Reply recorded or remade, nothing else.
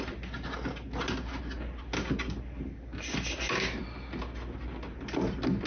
recorded